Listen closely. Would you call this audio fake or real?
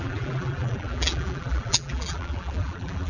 fake